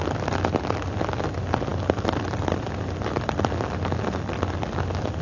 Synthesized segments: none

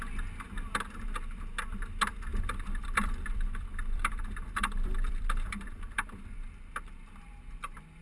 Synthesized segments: 2.3-6.5 (vocoder, BigVGAN v2)

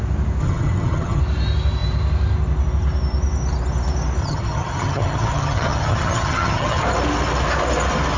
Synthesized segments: 0.4-1.2 (vocoder, HiFi-GAN); 4.2-6.8

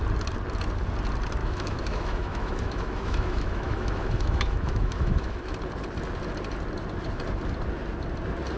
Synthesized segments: 1.4-5.5 (autoencoder, DAC-VAE)

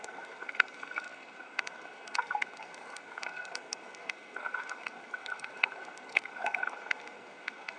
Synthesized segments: 0.0-7.8 (codec, SNAC)

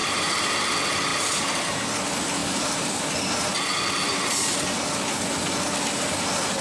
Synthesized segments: 0.0-0.5 (vocoder, BigVGAN v2); 1.1-1.9; 2.4-2.9

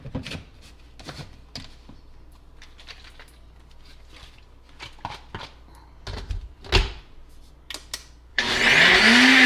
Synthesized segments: 8.3-8.9 (vocoder, BigVGAN v2)

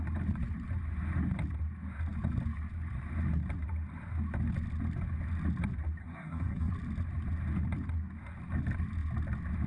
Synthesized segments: 6.0-6.7 (codec, SNAC)